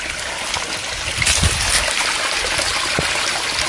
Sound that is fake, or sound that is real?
real